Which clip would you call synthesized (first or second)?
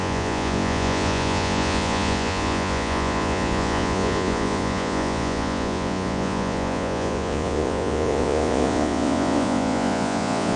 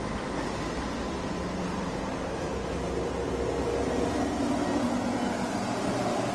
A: first